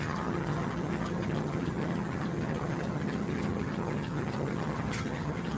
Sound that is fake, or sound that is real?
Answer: fake